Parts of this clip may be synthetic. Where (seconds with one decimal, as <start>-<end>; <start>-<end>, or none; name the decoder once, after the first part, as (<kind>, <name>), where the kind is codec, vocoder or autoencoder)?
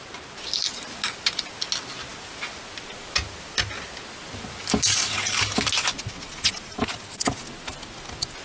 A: none